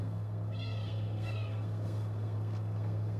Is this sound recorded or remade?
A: remade